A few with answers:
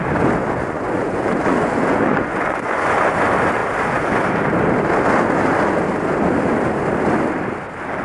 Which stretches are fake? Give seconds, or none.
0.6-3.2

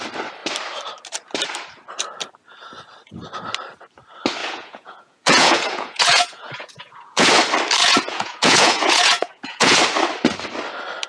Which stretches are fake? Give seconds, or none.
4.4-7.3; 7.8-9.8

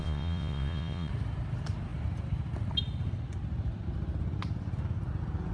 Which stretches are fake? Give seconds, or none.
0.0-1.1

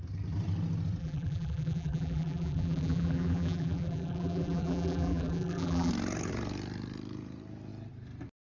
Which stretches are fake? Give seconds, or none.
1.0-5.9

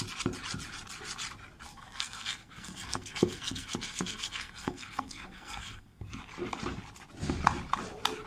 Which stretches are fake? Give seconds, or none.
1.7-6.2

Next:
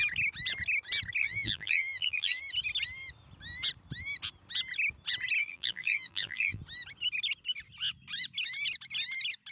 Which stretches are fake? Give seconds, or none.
1.2-2.4; 5.4-6.6

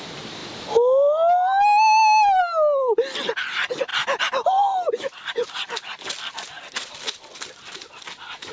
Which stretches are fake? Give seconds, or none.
none

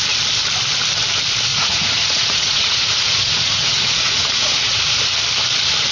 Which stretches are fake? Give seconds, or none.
1.5-5.0